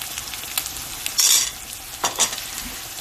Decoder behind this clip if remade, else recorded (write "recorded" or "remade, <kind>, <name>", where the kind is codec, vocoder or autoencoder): recorded